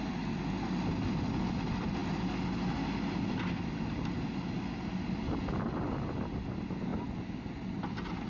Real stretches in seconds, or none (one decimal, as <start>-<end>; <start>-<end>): 0.0-8.3